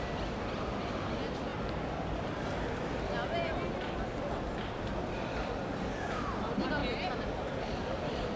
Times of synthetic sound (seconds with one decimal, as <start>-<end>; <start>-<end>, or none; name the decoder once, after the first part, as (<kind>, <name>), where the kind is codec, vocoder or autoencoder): 0.0-1.5 (vocoder, BigVGAN v2); 6.1-6.8; 7.6-8.4